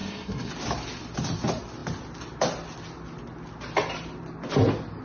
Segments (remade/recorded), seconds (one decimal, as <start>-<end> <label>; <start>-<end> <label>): 0.0-0.5 remade; 0.5-5.0 recorded